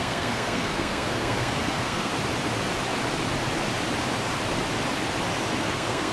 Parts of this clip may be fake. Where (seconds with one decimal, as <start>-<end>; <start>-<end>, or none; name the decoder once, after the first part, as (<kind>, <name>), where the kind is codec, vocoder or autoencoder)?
0.0-2.1 (codec, SNAC); 5.6-6.1